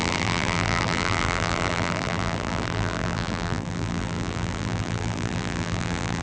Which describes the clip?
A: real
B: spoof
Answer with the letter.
B